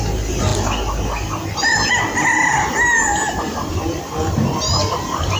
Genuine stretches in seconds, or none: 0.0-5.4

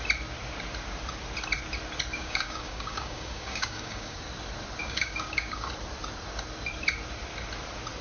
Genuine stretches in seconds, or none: 0.0-2.1; 4.2-4.8; 5.7-8.0